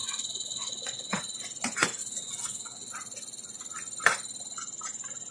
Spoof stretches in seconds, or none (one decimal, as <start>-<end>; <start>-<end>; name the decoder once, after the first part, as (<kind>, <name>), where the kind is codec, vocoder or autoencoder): 0.0-1.2 (vocoder, WaveNeXt); 2.0-2.9